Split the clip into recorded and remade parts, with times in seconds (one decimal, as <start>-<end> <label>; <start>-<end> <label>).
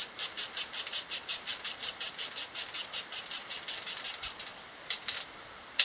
0.0-5.8 recorded